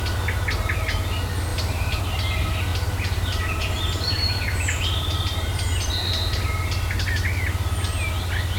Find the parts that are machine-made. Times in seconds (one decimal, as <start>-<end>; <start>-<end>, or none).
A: 1.5-2.0; 2.7-6.5